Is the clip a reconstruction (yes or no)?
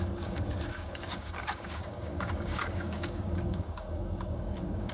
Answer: yes